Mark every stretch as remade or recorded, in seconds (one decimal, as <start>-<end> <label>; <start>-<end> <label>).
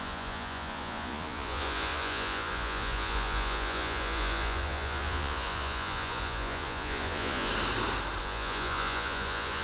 0.0-7.5 remade; 7.5-8.2 recorded; 8.2-9.6 remade